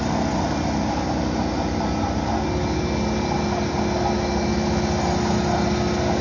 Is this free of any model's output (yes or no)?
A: yes